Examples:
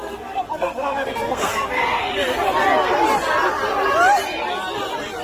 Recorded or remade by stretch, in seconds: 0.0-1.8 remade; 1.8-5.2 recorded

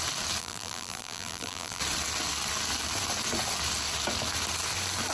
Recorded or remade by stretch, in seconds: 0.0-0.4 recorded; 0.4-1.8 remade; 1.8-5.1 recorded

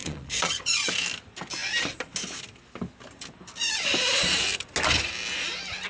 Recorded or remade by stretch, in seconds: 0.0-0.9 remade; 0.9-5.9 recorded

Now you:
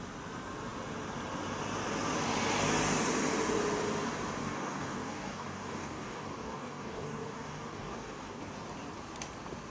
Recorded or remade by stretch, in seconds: 0.0-4.4 recorded; 4.4-8.4 remade; 8.4-9.7 recorded

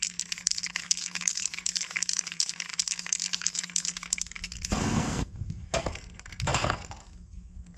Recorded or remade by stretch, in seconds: 0.0-7.8 remade

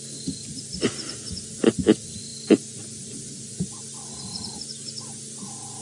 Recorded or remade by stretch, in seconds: 0.0-5.8 recorded

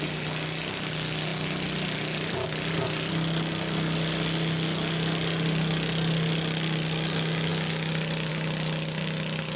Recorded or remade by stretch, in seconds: 0.0-9.6 recorded

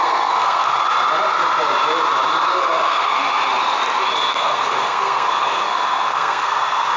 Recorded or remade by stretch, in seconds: 0.0-0.7 remade; 0.7-2.5 recorded; 2.5-3.2 remade; 3.2-4.3 recorded; 4.3-7.0 remade